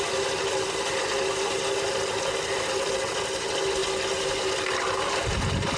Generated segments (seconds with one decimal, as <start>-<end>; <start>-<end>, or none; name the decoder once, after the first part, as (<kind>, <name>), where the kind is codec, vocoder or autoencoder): none